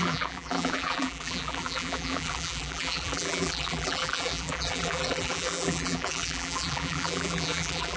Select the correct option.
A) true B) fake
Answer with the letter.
B